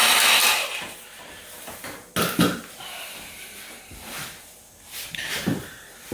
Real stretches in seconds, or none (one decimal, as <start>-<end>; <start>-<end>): 0.0-3.9

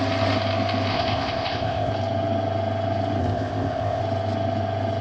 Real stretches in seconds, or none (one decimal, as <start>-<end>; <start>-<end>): 0.0-0.9; 1.9-3.2; 4.0-5.0

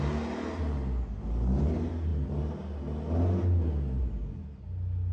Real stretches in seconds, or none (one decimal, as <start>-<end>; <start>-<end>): 0.0-5.1

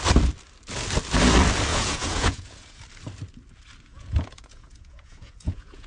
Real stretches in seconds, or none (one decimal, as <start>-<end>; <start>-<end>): 0.0-1.7; 2.8-3.9

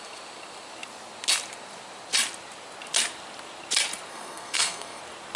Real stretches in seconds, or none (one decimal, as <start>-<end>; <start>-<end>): 0.0-4.1; 5.0-5.4